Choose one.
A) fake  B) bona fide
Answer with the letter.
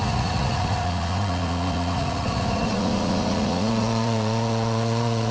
A